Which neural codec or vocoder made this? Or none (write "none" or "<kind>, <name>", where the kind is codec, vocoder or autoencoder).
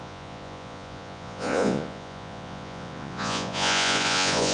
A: vocoder, Vocos